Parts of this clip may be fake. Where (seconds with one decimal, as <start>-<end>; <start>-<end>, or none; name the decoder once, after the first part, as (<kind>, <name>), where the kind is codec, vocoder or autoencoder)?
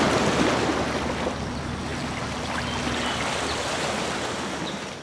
none